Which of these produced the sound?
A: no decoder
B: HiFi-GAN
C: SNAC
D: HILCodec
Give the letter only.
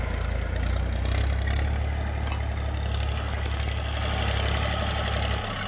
A